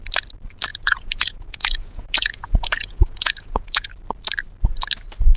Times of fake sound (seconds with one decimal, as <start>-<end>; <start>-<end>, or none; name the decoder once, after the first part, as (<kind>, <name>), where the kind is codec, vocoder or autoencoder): 0.7-3.9 (vocoder, Vocos)